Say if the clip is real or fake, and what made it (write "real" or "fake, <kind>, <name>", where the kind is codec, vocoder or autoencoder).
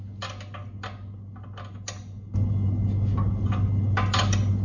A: real